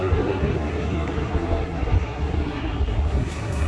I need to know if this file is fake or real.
fake